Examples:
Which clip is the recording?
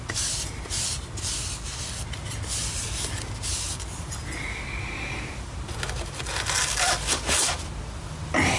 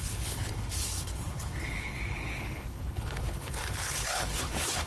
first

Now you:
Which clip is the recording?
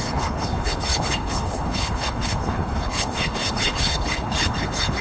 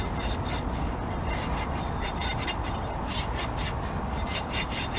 second